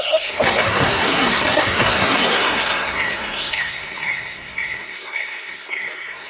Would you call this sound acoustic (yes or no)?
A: no